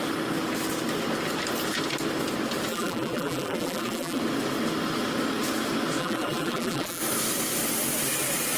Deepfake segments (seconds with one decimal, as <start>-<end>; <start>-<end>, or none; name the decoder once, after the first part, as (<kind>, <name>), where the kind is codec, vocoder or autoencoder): 2.7-4.2 (vocoder, BigVGAN v2); 6.0-7.0